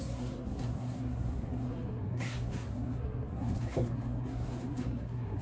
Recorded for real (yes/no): no